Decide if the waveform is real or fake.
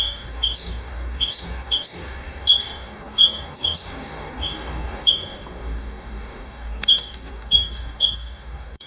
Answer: fake